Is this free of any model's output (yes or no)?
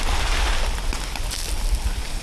yes